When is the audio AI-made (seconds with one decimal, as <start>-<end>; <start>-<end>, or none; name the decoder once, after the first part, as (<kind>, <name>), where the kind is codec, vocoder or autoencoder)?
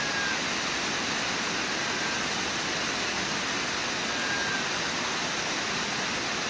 none